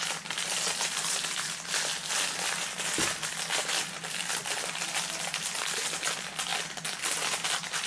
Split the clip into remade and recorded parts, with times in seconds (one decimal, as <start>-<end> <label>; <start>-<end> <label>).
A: 0.0-7.9 recorded